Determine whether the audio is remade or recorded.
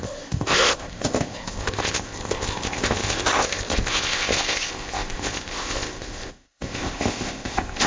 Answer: remade